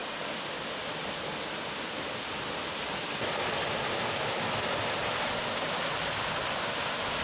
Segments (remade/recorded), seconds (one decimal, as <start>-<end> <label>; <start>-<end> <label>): 0.0-7.2 recorded